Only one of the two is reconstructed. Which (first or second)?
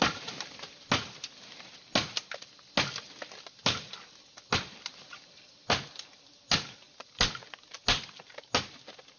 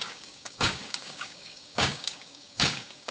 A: second